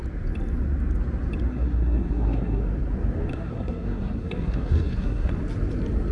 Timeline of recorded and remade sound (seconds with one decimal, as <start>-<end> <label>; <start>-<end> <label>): 0.0-1.5 recorded; 1.5-2.6 remade; 2.6-3.3 recorded; 3.3-5.3 remade; 5.3-6.1 recorded